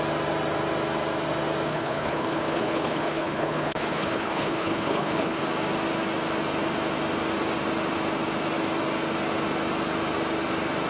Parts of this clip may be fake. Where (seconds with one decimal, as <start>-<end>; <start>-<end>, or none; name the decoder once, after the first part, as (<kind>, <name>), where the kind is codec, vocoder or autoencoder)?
1.7-5.4 (codec, HILCodec)